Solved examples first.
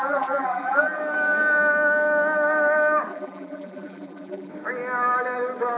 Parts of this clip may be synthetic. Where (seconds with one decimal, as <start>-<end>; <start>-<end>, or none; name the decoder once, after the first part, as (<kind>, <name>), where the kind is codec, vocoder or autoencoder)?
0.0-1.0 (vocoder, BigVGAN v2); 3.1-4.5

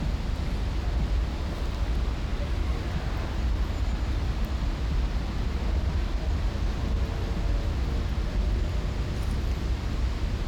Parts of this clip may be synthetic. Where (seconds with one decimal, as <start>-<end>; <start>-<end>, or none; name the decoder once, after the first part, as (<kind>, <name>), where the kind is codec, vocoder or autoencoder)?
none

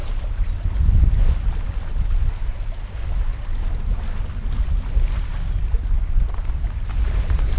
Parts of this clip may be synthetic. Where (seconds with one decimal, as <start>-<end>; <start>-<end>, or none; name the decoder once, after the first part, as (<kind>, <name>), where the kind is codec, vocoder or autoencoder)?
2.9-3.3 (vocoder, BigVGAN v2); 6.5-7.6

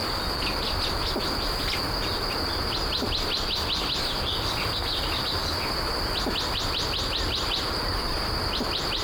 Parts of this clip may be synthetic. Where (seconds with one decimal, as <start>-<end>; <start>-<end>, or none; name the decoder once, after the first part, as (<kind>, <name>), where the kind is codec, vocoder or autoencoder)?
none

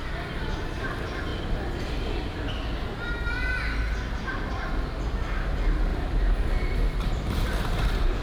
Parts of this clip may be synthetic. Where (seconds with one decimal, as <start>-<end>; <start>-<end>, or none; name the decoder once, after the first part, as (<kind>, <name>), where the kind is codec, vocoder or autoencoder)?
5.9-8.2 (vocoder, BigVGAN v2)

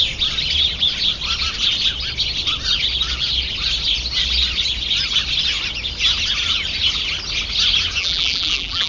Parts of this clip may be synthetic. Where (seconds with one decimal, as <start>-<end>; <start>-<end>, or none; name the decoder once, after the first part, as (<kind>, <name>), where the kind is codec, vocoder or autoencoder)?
8.0-8.9 (vocoder, BigVGAN v2)

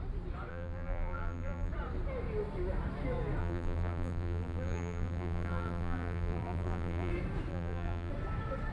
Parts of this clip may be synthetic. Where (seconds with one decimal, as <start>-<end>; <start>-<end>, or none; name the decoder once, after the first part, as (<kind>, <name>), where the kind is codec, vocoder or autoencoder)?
0.5-1.7 (vocoder, BigVGAN v2); 3.4-7.1; 7.5-8.1

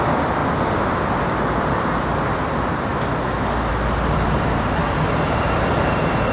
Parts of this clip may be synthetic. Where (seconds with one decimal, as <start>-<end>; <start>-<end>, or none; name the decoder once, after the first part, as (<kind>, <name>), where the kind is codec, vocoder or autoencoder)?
0.0-0.4 (vocoder, BigVGAN v2); 1.2-2.9; 3.7-4.8